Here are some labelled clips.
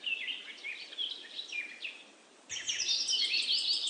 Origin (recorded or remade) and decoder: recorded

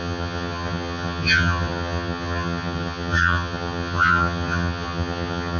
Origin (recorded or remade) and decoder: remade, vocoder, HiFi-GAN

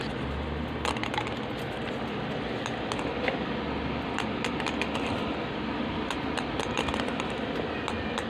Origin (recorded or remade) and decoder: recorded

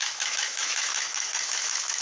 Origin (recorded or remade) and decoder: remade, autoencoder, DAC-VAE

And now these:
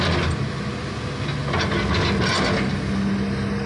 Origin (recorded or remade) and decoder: recorded